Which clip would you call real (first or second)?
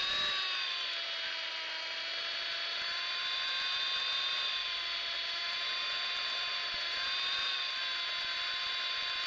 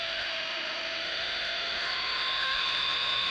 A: first